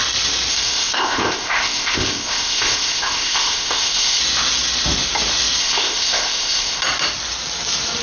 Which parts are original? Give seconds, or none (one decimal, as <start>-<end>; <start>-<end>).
0.0-0.5; 4.2-5.6; 6.8-8.0